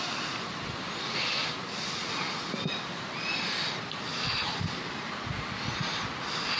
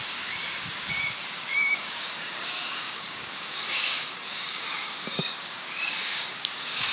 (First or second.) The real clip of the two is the first